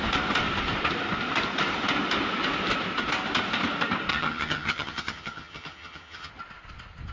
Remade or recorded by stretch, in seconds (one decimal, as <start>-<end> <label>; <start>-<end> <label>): 0.0-4.1 recorded; 4.1-6.3 remade; 6.3-7.1 recorded